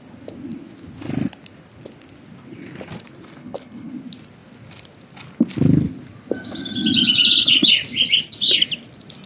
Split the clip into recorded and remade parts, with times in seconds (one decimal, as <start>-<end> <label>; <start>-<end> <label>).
0.0-3.4 recorded; 3.4-3.9 remade; 3.9-9.3 recorded